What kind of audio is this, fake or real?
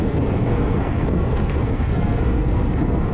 fake